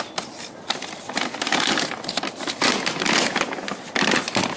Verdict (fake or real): fake